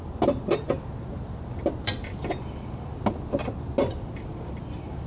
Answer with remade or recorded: recorded